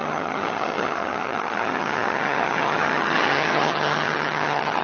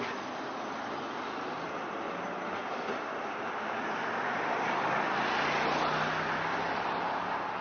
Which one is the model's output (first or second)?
first